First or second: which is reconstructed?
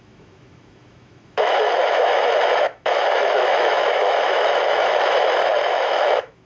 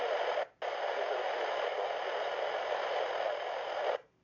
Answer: first